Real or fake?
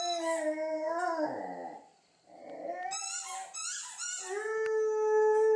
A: real